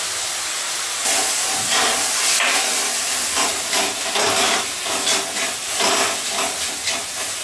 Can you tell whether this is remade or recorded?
recorded